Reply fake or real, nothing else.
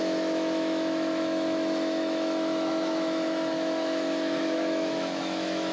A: fake